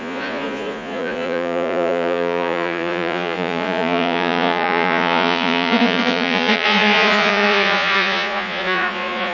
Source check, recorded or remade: remade